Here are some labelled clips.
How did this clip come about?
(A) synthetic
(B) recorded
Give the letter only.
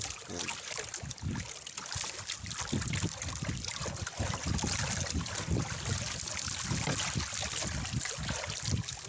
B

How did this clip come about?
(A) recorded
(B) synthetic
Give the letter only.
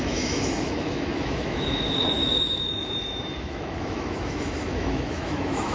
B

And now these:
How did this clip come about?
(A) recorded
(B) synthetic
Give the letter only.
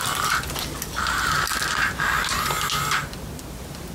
A